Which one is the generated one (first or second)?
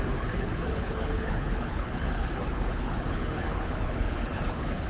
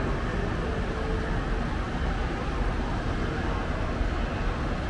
first